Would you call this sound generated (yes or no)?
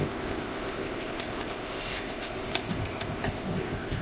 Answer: yes